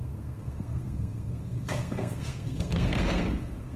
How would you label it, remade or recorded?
remade